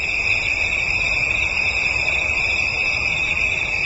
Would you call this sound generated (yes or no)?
no